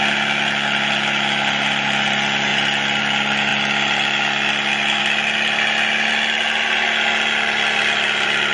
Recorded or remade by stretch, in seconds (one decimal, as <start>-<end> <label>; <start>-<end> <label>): 0.0-8.5 recorded